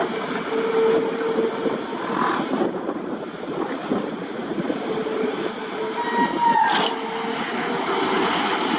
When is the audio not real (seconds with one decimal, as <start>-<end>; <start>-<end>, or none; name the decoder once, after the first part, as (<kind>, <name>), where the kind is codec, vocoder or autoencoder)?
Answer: none